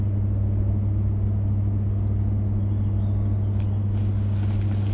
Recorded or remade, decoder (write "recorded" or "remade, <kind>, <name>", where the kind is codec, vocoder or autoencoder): recorded